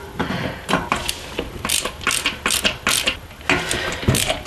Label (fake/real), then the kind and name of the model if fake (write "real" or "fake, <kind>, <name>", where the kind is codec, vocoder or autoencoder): real